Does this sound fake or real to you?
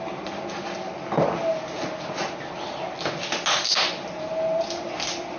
real